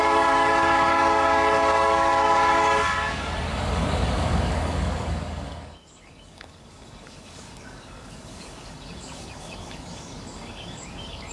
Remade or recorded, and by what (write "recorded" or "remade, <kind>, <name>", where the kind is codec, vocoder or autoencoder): remade, codec, DAC